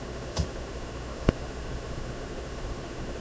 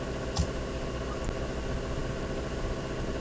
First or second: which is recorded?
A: second